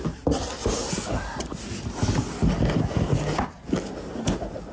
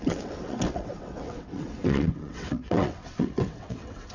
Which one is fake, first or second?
second